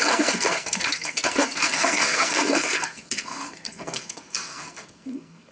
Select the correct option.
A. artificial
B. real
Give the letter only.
A